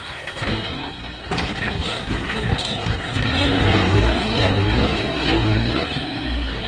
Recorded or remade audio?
remade